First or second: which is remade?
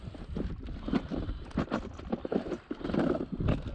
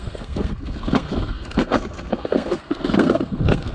second